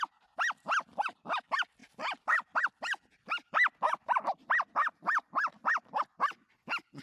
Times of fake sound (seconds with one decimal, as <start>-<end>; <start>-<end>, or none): none